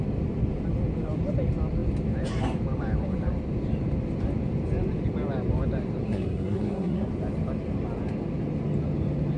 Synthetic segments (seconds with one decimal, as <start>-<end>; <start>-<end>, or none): 6.0-7.1